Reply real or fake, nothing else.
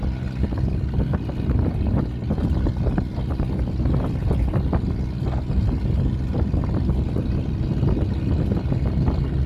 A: real